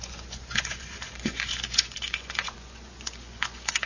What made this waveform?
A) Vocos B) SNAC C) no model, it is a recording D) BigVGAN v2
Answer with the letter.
A